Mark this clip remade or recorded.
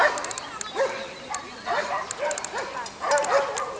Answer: recorded